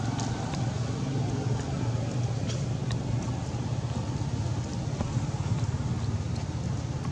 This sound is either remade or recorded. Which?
recorded